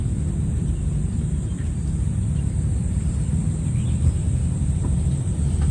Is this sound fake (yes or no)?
yes